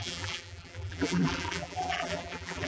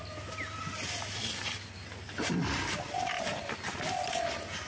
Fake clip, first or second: first